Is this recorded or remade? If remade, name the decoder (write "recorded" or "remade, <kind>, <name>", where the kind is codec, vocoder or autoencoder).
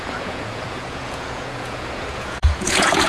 remade, vocoder, Vocos